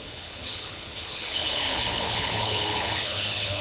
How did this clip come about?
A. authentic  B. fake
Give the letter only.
B